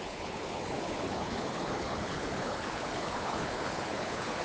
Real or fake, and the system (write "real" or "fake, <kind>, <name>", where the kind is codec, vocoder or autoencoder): fake, codec, HILCodec